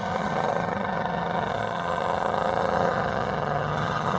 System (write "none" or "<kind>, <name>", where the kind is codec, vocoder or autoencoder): vocoder, HiFi-GAN